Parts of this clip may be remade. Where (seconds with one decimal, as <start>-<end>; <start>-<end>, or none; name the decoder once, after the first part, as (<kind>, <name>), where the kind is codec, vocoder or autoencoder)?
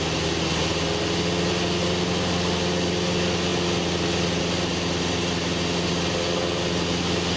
none